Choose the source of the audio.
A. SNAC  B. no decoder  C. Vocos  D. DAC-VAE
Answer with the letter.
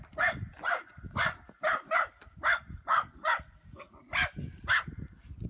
B